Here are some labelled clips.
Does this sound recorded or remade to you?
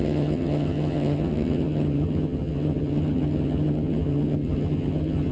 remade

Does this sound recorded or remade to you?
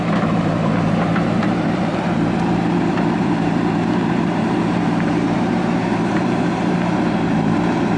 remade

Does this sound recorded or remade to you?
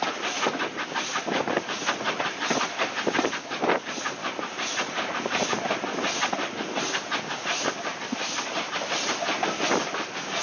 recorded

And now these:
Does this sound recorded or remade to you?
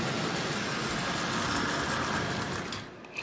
recorded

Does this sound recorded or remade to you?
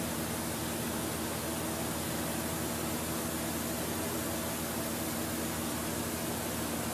recorded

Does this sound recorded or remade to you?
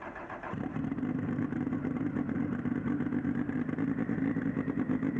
remade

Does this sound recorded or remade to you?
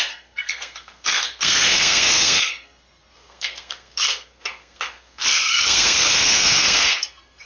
remade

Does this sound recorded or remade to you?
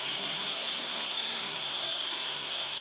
remade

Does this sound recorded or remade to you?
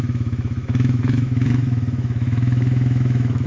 remade